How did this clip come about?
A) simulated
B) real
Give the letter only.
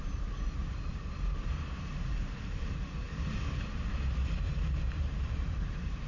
A